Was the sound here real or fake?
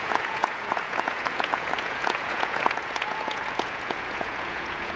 fake